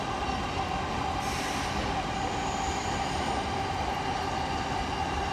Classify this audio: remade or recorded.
recorded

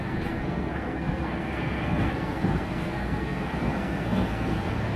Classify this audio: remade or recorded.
remade